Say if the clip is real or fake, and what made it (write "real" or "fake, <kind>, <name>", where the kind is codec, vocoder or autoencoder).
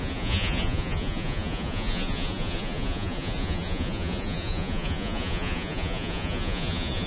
fake, vocoder, Vocos